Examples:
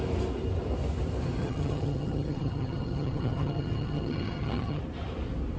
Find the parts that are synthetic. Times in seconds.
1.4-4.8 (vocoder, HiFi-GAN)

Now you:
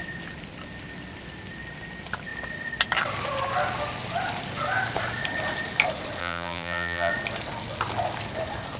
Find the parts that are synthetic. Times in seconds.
6.2-7.1 (vocoder, BigVGAN v2)

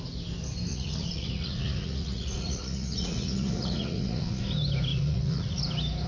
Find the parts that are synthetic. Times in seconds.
0.7-4.4 (vocoder, Vocos); 4.9-5.6

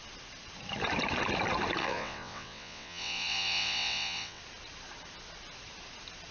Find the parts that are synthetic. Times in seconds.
1.8-4.4 (vocoder, WaveNeXt)

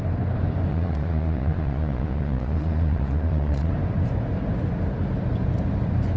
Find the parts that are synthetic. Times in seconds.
0.7-3.7 (vocoder, Vocos)

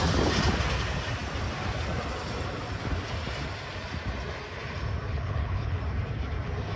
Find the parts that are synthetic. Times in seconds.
5.1-5.8 (codec, HILCodec)

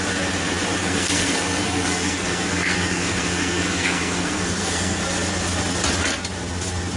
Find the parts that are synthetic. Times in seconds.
0.8-5.0 (codec, SNAC)